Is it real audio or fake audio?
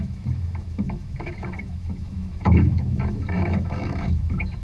fake